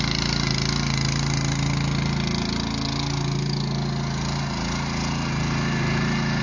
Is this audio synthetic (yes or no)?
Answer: no